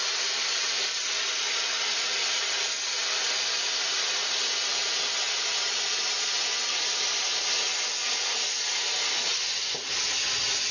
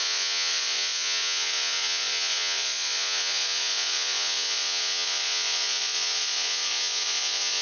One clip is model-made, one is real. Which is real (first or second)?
first